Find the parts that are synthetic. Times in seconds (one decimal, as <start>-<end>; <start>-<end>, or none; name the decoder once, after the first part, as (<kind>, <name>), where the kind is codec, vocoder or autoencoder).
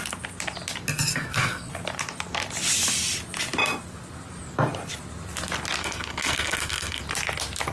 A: 1.1-1.7 (codec, SNAC); 5.8-7.0